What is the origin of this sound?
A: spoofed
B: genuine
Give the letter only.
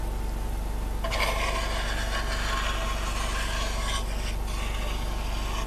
B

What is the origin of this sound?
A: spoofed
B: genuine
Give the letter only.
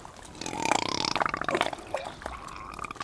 B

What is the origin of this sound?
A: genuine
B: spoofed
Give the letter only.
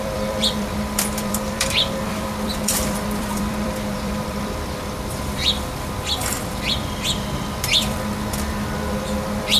B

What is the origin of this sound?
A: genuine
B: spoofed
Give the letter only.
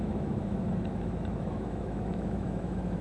B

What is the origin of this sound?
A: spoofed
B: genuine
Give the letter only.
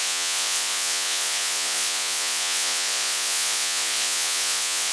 A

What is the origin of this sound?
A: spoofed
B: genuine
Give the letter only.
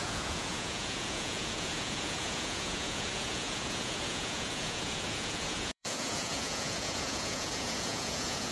A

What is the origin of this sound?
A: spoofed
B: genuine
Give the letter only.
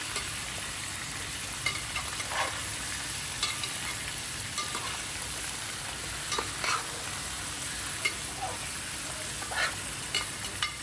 B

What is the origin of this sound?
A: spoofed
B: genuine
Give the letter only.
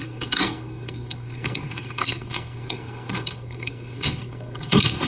A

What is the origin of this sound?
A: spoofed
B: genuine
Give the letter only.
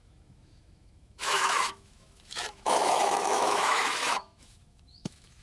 A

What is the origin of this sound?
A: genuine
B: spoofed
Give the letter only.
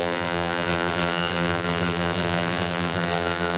B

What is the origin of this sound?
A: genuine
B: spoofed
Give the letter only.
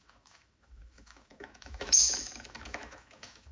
B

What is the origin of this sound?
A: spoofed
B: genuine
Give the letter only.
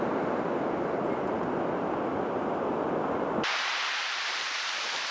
B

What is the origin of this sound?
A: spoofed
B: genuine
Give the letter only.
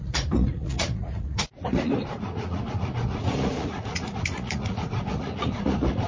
A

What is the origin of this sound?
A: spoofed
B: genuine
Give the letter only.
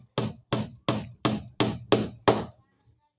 B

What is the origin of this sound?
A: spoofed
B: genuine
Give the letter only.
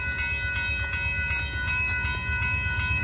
B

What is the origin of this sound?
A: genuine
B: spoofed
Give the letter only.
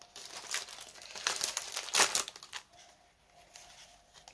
A